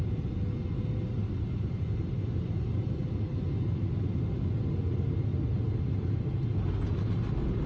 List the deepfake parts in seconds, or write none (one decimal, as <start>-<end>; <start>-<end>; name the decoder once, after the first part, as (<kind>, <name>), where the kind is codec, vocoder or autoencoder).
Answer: none